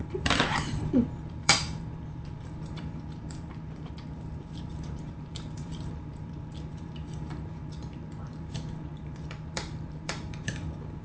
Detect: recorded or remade remade